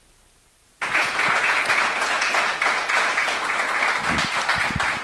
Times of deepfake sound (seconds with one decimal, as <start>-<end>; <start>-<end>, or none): 0.6-3.6